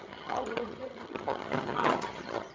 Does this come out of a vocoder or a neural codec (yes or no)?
yes